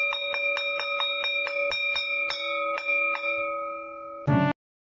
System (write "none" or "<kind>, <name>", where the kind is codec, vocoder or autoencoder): none